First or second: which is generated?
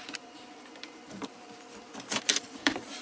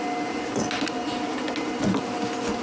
first